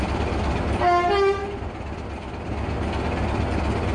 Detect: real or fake real